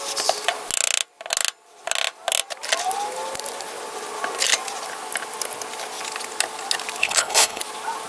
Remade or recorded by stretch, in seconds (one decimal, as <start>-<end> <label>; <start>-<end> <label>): 0.0-7.0 recorded; 7.0-7.6 remade; 7.6-8.1 recorded